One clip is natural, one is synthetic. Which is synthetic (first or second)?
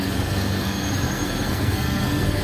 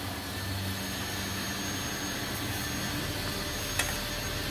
first